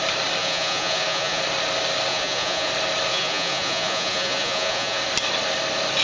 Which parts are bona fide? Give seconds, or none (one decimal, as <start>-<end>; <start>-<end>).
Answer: 0.0-0.4; 1.4-2.1; 2.7-3.1; 5.0-6.0